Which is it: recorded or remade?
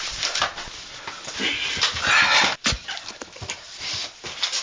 recorded